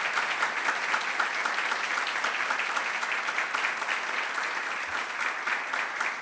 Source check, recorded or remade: recorded